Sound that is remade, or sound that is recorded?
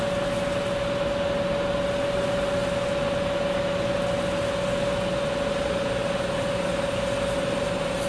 recorded